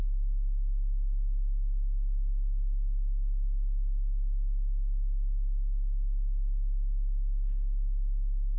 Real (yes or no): no